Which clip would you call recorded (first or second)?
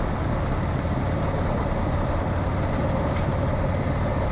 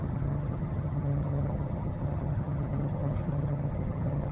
first